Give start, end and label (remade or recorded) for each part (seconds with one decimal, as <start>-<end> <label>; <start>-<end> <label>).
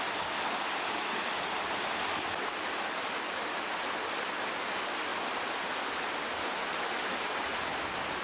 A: 0.0-8.2 recorded